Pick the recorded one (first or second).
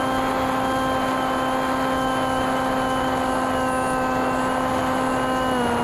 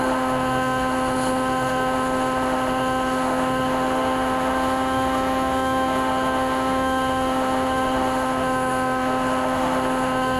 first